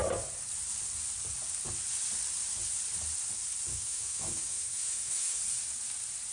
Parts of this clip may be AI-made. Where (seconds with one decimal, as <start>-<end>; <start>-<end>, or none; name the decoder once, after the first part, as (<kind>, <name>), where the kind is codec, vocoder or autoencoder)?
3.7-5.4 (autoencoder, DAC-VAE)